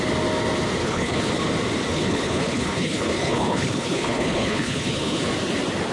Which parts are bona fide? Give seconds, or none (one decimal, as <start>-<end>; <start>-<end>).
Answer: 0.0-0.8; 1.3-1.9; 5.3-5.9